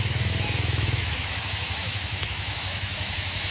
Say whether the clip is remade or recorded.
remade